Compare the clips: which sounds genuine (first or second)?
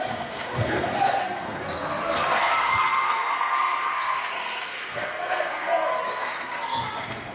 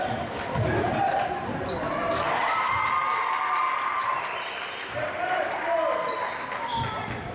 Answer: second